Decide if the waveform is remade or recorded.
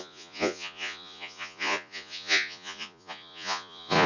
remade